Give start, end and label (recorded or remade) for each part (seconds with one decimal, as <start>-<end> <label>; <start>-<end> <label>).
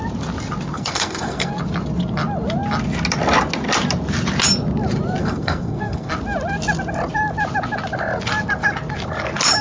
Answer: 0.0-0.7 recorded; 0.7-1.5 remade; 1.5-5.2 recorded; 5.2-6.1 remade; 6.1-9.6 recorded